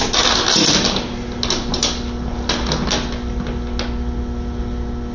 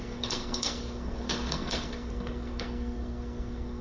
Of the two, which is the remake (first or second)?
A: second